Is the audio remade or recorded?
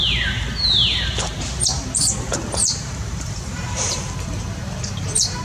remade